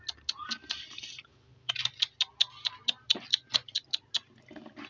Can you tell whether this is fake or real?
real